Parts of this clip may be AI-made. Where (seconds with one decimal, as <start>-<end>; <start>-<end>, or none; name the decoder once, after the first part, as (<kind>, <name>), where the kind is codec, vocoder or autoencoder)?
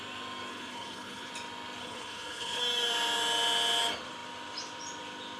0.5-1.3 (codec, HILCodec); 1.8-2.6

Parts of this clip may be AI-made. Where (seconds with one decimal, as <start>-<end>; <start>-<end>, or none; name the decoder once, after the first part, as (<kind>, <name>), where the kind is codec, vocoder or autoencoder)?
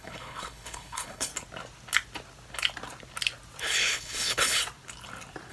0.0-1.3 (codec, HILCodec); 3.6-4.6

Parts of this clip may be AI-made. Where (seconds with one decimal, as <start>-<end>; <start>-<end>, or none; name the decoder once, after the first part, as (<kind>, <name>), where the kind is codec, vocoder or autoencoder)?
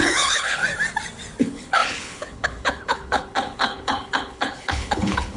0.0-0.6 (codec, HILCodec); 1.4-5.4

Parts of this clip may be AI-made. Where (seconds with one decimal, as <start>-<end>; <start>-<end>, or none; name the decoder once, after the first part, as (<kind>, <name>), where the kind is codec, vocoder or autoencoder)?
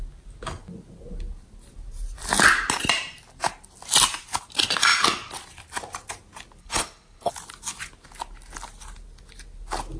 6.6-7.3 (codec, HILCodec)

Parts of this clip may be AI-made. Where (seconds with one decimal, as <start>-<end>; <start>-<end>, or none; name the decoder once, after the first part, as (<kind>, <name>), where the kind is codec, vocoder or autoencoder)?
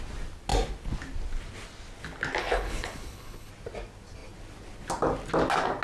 2.4-3.5 (codec, HILCodec)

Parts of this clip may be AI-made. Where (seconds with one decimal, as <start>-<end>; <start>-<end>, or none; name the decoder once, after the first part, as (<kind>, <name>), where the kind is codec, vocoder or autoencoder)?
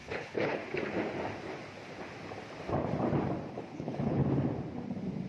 0.0-0.6 (codec, HILCodec); 3.5-4.2